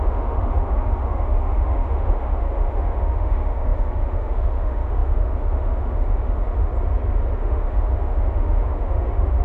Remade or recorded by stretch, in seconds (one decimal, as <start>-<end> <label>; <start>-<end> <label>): 0.0-6.7 remade; 6.7-7.4 recorded; 7.4-9.4 remade